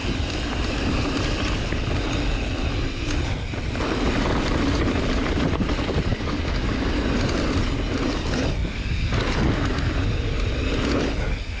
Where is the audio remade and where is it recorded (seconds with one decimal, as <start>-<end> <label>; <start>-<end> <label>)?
0.0-6.1 recorded; 6.1-6.9 remade; 6.9-11.6 recorded